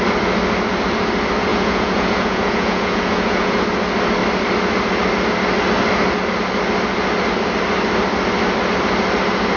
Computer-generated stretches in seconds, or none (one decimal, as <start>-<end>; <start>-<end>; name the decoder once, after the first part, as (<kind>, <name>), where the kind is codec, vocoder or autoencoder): 1.5-3.6 (vocoder, Vocos)